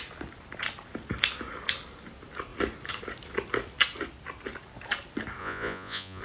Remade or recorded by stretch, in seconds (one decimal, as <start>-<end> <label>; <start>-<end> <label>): 0.0-5.4 recorded; 5.4-6.2 remade